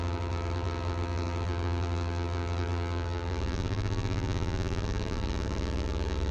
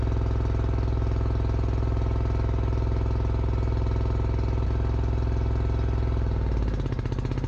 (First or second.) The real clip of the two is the second